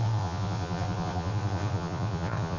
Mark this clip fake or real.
fake